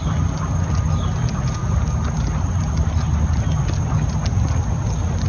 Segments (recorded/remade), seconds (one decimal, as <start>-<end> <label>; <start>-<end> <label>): 0.0-5.3 recorded